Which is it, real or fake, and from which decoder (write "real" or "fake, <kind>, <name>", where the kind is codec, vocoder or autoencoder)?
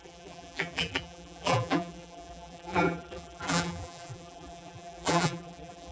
fake, vocoder, BigVGAN v2